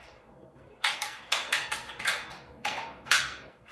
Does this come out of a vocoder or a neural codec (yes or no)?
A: yes